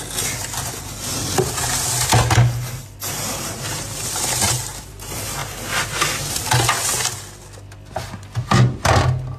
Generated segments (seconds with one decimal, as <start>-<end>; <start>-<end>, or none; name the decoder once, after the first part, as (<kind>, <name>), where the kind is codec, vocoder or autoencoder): none